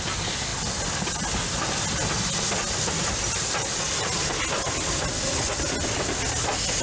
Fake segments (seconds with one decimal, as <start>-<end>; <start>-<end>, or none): none